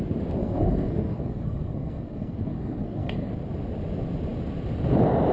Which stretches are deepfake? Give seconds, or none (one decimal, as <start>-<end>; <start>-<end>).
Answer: 0.4-3.3